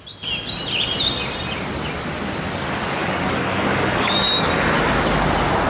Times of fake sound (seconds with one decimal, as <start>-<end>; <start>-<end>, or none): 3.0-4.5